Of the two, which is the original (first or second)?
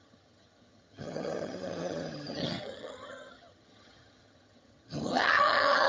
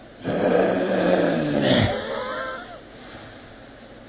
second